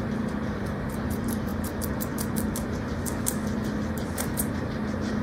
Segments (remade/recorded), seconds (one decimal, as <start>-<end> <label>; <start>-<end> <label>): 0.0-1.5 remade; 1.5-3.9 recorded; 3.9-5.2 remade